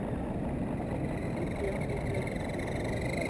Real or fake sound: real